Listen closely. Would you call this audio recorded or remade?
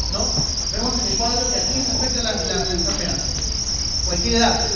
recorded